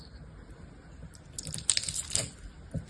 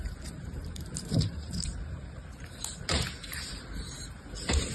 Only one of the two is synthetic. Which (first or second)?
second